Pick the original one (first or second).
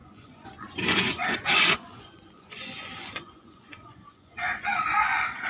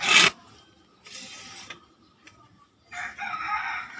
second